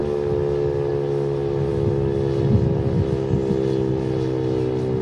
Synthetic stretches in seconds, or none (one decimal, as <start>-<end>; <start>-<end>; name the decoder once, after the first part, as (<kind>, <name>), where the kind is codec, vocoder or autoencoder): none